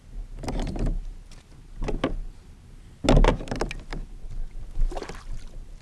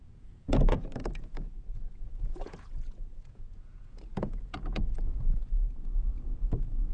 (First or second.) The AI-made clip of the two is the second